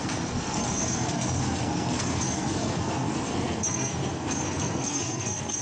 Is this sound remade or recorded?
remade